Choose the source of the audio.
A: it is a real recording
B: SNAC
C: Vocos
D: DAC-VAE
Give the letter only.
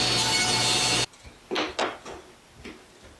A